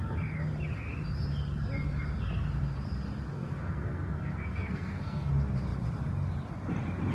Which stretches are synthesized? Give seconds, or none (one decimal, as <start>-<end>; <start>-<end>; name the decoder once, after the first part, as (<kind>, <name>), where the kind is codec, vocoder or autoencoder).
3.3-5.3 (codec, SNAC)